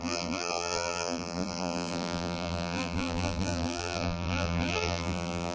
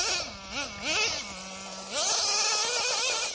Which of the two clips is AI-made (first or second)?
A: first